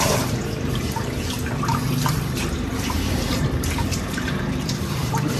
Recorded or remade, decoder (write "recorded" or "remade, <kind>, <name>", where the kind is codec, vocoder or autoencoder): remade, vocoder, BigVGAN v2